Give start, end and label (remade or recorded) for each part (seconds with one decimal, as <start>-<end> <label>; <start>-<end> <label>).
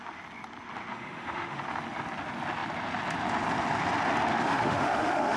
0.0-0.9 recorded; 0.9-1.6 remade; 1.6-4.3 recorded; 4.3-5.4 remade